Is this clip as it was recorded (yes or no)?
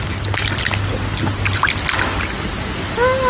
yes